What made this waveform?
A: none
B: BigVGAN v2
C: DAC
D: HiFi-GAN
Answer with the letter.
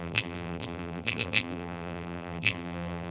B